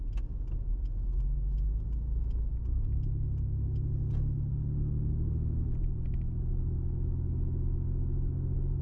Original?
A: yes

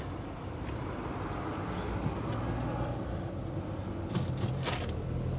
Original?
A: yes